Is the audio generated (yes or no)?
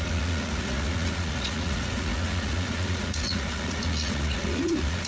yes